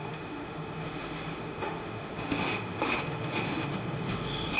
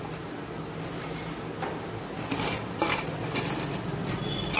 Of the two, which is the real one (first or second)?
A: second